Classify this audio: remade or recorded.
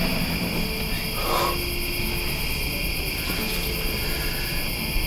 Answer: recorded